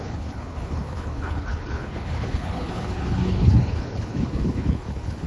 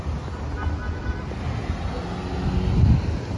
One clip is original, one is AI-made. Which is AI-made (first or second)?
first